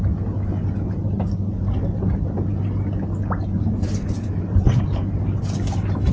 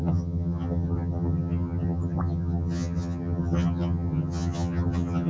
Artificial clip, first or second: second